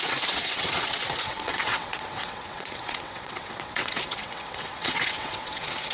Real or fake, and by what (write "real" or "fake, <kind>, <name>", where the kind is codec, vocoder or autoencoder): fake, vocoder, WaveNeXt